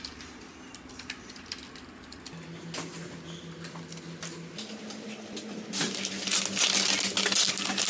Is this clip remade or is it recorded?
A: recorded